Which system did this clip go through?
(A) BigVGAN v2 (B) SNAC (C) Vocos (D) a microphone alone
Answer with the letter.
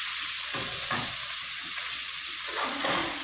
C